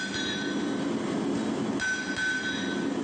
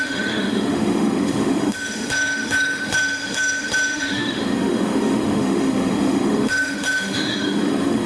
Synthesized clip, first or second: second